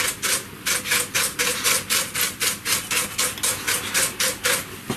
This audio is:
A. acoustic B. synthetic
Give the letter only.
A